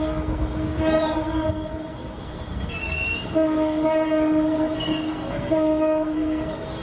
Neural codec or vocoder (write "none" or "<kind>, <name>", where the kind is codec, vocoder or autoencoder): codec, SNAC